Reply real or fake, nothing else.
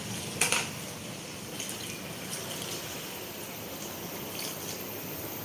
real